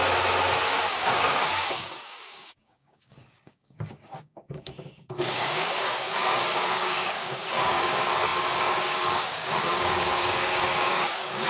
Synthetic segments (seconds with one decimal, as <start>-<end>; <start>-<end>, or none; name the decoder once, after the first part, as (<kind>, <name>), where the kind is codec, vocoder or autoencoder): 0.7-11.5 (codec, DAC)